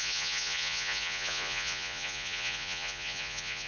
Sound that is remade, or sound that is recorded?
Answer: remade